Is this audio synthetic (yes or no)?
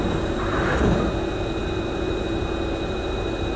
no